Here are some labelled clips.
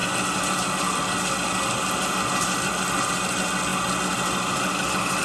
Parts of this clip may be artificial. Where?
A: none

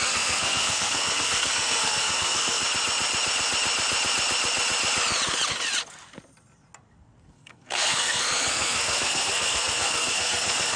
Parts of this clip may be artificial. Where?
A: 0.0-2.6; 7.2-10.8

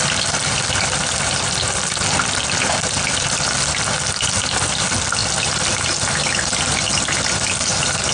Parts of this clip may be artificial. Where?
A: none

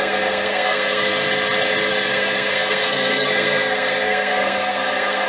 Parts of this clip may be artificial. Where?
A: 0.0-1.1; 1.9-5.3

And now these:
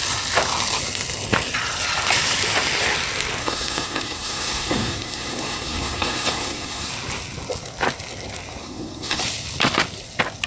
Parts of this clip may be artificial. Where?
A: 3.4-6.9; 8.6-9.2

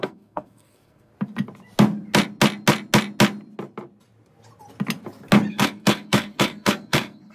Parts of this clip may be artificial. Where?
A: 0.0-1.1; 5.5-7.3

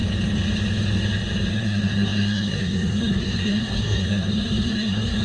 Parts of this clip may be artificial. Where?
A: 1.5-5.2

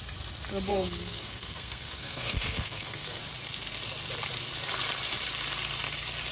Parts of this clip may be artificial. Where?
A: 0.7-3.2